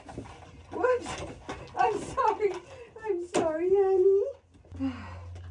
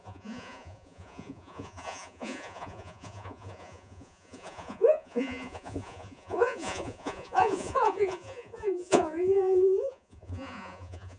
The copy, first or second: second